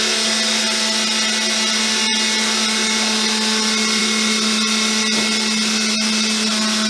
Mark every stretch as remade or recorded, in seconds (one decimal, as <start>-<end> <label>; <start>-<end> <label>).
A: 0.0-6.9 recorded